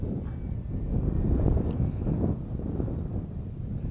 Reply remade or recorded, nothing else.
recorded